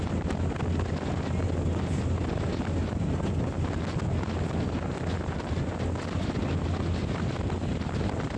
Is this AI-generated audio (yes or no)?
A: no